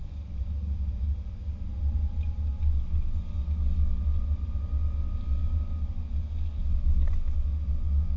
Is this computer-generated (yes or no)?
no